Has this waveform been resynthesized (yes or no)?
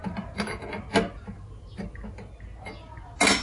no